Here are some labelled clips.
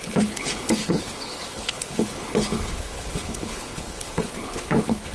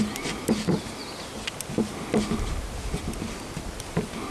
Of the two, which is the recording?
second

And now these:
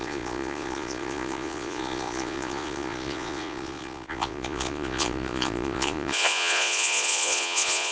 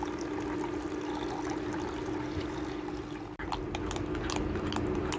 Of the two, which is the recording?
second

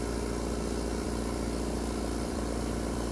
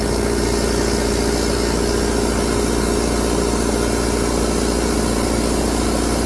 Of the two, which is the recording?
second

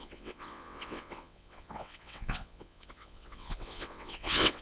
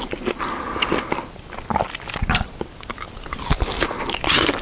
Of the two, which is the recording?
second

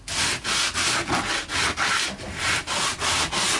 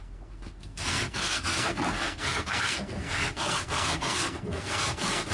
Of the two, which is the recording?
first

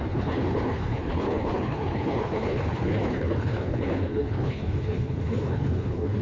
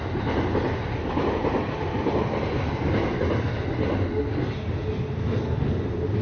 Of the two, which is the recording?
second